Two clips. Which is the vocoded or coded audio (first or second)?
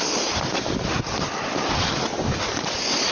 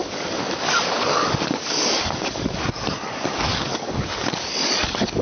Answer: second